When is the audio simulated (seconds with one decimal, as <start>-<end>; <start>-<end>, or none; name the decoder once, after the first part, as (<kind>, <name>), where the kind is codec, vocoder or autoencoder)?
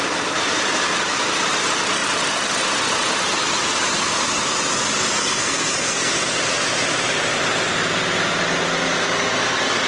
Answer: 5.2-6.1 (codec, SNAC)